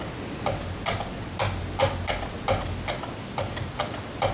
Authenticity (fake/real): real